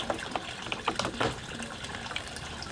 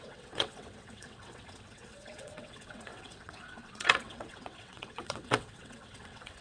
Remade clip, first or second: second